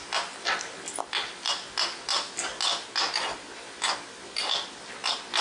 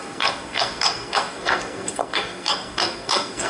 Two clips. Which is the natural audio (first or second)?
first